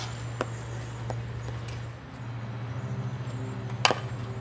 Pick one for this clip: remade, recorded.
recorded